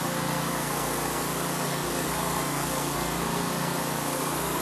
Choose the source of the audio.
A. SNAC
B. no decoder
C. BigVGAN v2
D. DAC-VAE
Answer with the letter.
A